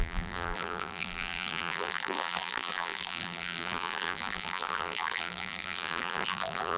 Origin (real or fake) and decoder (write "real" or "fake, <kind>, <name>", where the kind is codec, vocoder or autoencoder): fake, vocoder, BigVGAN v2